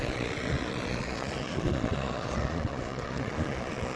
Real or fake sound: fake